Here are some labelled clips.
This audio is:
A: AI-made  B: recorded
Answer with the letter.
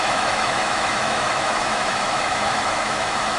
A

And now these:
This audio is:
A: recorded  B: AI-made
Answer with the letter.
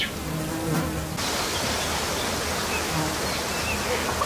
A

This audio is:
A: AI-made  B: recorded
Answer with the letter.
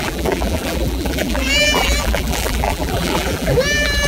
A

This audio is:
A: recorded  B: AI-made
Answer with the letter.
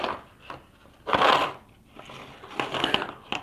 A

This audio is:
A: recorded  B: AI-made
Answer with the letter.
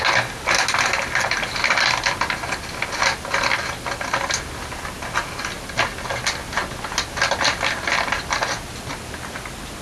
A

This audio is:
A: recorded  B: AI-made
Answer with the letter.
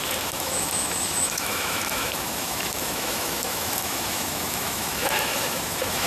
B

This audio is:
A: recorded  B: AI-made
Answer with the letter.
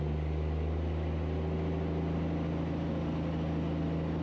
A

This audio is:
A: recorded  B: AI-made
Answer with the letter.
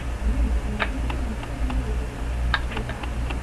A